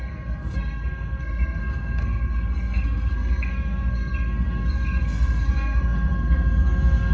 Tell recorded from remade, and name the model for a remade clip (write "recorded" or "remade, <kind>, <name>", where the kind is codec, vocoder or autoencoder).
remade, codec, SNAC